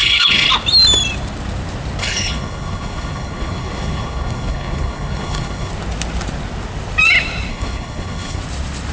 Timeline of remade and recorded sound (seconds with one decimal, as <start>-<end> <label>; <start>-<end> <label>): 0.0-0.5 remade; 0.5-2.0 recorded; 2.0-5.7 remade; 5.7-7.5 recorded; 7.5-8.4 remade; 8.4-8.9 recorded